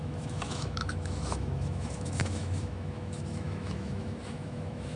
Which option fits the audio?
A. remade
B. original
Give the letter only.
A